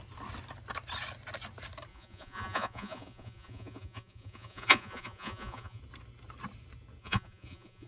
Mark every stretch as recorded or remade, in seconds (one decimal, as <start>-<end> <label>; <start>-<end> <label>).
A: 0.0-1.9 recorded; 1.9-5.8 remade; 5.8-7.0 recorded; 7.0-7.9 remade